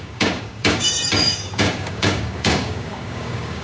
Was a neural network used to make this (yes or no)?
yes